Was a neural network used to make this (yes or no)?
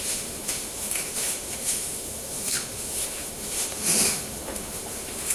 yes